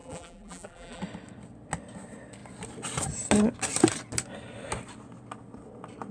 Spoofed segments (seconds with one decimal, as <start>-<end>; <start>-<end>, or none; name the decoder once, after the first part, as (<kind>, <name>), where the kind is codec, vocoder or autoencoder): 0.0-1.0 (vocoder, BigVGAN v2)